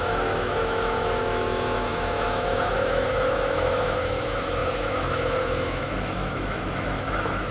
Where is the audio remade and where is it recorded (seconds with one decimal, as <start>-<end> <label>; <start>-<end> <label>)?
0.0-7.5 remade